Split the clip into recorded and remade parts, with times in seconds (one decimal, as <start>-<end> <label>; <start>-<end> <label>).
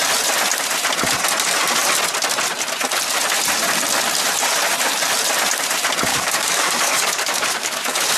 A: 0.0-6.1 recorded; 6.1-8.2 remade